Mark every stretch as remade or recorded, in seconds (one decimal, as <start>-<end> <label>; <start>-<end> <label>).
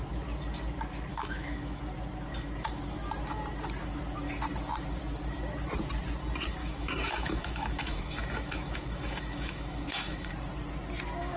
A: 0.0-1.1 recorded; 1.1-1.8 remade; 1.8-6.6 recorded; 6.6-10.3 remade; 10.3-11.4 recorded